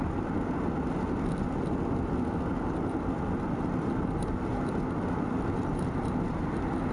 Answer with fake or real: real